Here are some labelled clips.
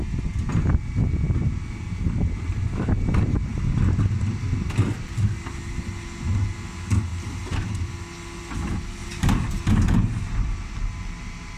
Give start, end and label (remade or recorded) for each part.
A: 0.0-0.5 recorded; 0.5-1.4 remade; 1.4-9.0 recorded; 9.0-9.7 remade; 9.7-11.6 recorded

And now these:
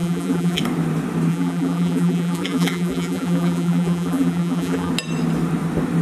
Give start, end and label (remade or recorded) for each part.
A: 0.0-0.6 remade; 0.6-1.3 recorded; 1.3-4.9 remade; 4.9-6.0 recorded

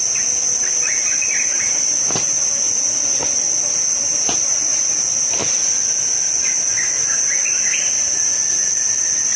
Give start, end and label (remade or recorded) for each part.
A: 0.0-9.4 recorded